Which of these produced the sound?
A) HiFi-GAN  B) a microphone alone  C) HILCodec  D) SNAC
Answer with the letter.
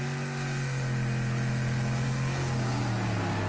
B